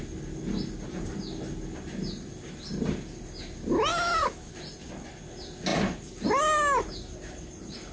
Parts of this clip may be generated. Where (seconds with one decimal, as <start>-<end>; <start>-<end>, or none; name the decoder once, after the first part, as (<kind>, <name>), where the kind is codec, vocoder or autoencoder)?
3.9-4.5 (autoencoder, DAC-VAE)